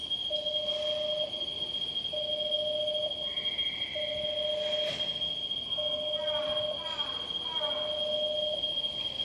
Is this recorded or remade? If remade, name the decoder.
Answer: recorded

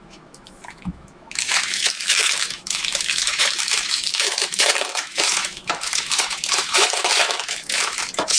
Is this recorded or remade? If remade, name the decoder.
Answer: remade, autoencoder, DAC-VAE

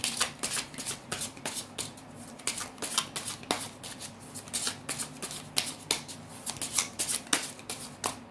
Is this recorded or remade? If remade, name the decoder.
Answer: recorded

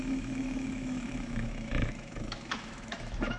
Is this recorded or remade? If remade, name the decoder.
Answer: remade, autoencoder, DAC-VAE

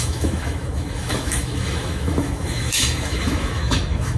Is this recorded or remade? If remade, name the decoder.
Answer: remade, autoencoder, DAC-VAE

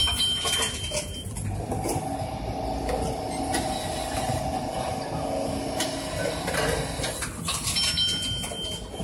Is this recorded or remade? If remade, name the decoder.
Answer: recorded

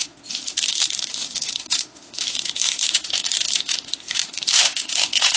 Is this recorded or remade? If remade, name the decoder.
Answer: remade, autoencoder, DAC-VAE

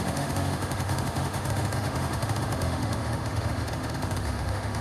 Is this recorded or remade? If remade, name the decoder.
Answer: remade, autoencoder, DAC-VAE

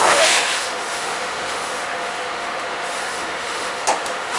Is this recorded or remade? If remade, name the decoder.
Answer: remade, autoencoder, DAC-VAE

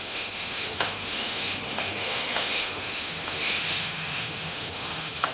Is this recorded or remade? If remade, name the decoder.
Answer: remade, autoencoder, DAC-VAE